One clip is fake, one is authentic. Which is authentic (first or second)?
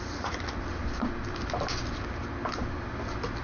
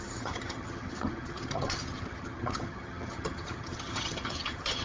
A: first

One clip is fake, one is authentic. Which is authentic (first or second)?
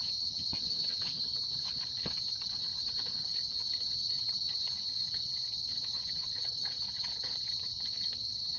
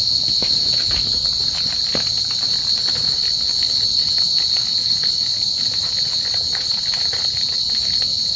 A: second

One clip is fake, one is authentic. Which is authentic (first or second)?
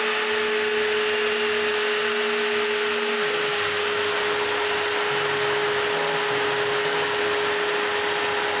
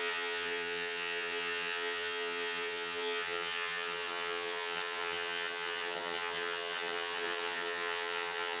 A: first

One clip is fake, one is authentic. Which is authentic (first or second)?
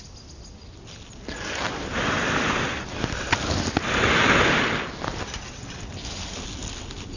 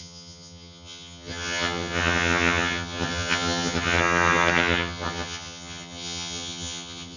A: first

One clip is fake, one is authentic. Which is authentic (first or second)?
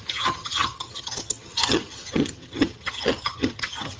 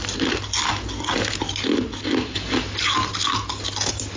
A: second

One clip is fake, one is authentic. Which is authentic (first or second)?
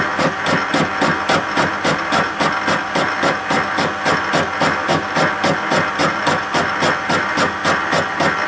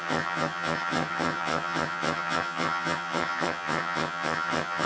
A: first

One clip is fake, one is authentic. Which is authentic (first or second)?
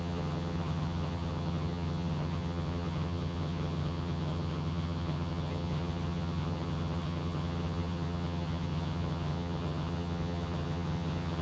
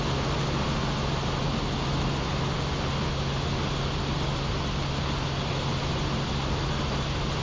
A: second